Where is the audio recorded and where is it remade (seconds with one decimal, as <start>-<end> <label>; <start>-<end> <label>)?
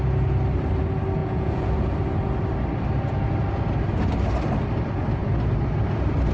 0.0-1.2 recorded; 1.2-1.7 remade; 1.7-6.3 recorded